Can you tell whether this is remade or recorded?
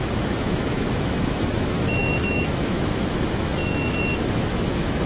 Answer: remade